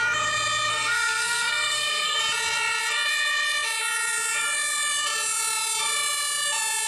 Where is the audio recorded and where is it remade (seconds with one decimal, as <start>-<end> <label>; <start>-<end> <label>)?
0.0-0.7 recorded; 0.7-2.2 remade; 2.2-6.9 recorded